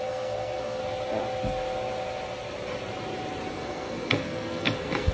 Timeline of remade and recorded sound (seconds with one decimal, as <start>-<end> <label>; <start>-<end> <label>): 0.0-0.8 remade; 0.8-3.5 recorded; 3.5-5.1 remade